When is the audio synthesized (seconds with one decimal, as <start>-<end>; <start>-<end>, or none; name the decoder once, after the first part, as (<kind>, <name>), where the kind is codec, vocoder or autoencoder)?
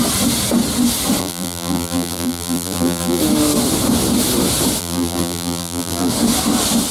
1.2-3.2 (vocoder, BigVGAN v2); 4.8-6.1